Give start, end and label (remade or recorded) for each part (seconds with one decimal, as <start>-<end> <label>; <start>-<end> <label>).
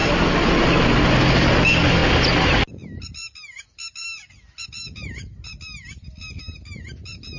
0.0-7.4 recorded